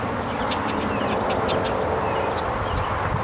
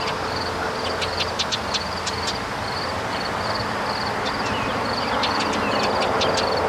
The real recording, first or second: second